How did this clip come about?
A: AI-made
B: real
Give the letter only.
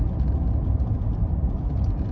B